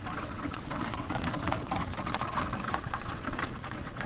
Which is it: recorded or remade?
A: remade